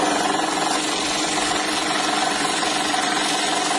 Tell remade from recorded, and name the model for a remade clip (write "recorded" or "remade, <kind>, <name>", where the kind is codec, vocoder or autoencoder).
remade, vocoder, Vocos